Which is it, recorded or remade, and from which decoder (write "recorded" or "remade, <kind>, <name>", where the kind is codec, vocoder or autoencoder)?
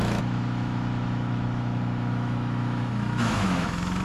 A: remade, autoencoder, DAC-VAE